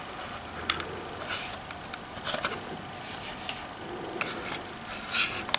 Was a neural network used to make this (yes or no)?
no